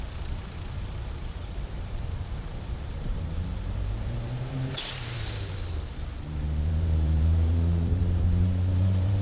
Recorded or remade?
remade